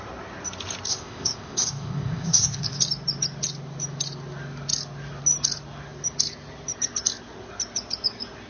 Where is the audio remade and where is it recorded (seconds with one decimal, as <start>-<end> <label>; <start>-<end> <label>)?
0.0-0.9 recorded; 0.9-2.8 remade; 2.8-8.5 recorded